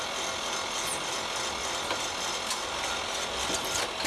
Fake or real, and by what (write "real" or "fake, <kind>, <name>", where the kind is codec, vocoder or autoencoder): real